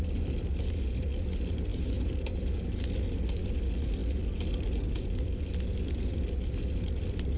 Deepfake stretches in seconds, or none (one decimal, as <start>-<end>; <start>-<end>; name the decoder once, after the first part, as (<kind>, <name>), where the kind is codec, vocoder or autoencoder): 1.7-2.5 (vocoder, BigVGAN v2)